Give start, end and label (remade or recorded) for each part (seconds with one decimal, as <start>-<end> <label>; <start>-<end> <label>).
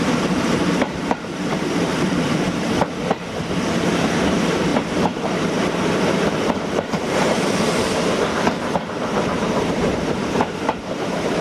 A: 0.0-11.4 remade